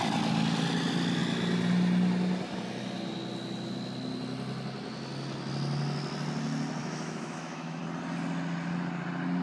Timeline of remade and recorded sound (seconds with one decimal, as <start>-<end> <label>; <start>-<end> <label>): 0.0-6.8 recorded; 6.8-7.8 remade; 7.8-9.4 recorded